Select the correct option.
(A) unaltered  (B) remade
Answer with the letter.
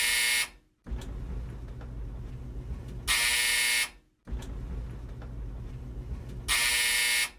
A